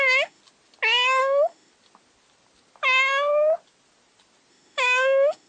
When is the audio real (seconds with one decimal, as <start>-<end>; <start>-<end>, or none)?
0.4-1.2; 1.7-4.5

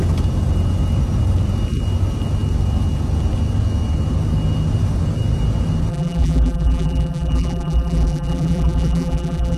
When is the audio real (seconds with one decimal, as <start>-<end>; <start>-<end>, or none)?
0.0-5.9

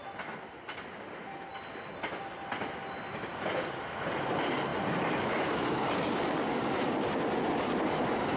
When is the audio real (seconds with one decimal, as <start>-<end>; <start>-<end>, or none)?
0.0-8.4

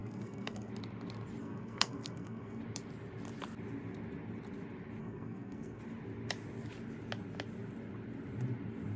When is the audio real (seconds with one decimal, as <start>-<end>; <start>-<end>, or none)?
0.7-1.4; 2.6-5.0; 5.8-9.0

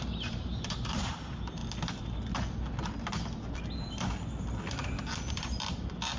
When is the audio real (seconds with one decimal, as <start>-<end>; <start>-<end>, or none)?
1.6-5.3

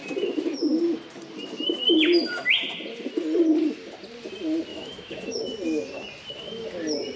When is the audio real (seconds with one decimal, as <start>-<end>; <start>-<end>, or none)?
0.0-4.7; 5.4-7.2

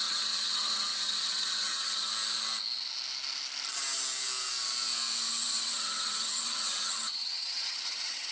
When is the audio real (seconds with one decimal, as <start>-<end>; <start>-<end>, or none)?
2.1-5.3